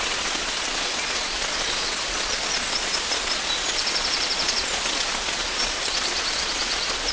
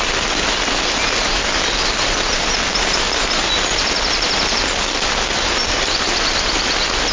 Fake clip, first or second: first